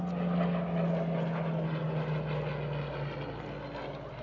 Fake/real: real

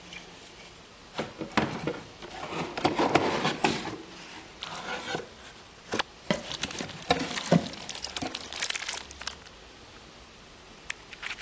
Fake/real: real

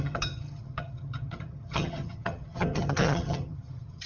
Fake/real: fake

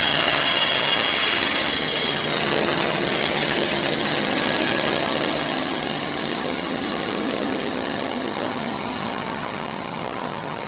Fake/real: fake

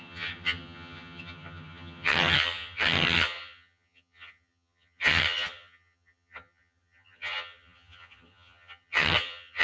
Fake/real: fake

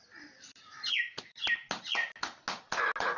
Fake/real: real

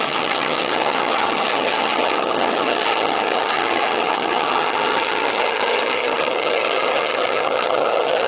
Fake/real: fake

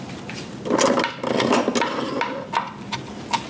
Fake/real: real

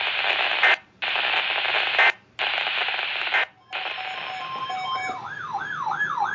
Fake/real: real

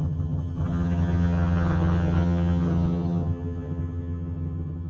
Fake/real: fake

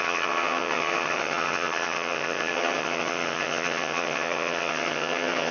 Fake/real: fake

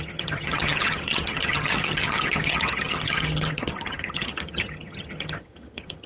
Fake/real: fake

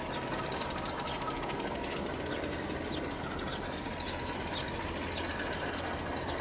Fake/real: real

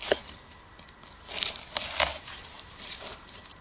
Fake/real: real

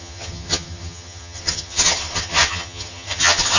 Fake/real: fake